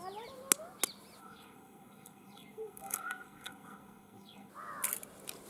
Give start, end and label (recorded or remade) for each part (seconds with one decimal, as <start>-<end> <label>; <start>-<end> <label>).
0.0-1.2 recorded; 1.2-4.5 remade; 4.5-5.5 recorded